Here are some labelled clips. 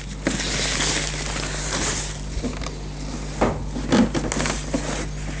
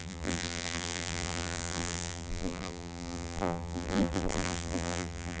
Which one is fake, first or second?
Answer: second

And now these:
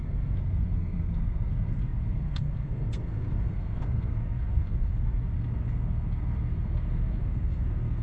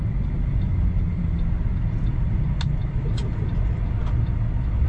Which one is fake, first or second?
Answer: first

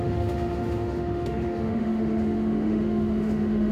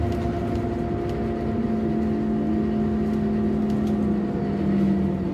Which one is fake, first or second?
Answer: first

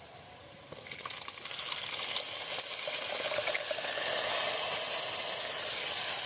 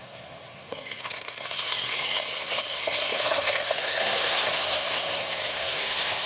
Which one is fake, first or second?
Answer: second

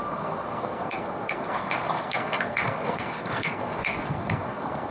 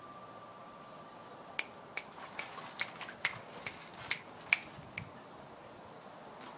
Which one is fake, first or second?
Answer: first